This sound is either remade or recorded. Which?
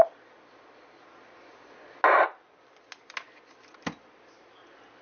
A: recorded